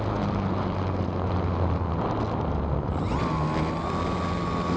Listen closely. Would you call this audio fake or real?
real